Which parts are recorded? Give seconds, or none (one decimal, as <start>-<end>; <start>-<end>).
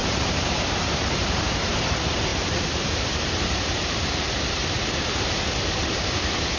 1.8-2.3; 5.3-6.6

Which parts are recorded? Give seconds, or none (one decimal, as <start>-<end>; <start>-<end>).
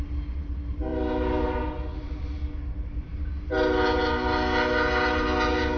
0.0-5.8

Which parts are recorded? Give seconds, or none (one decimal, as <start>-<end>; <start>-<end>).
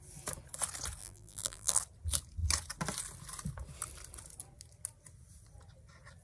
0.0-1.0; 1.8-6.2